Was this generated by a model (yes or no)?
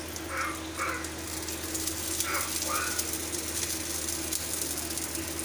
no